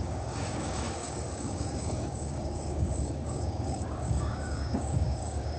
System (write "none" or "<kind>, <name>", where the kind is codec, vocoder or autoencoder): codec, DAC